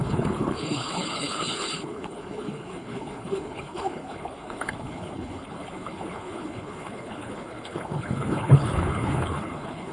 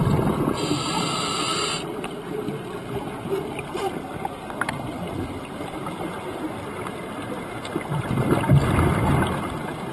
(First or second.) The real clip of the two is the second